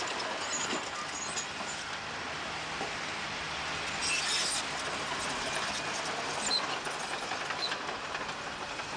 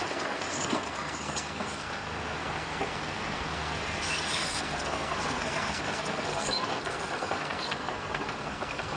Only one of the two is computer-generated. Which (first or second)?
second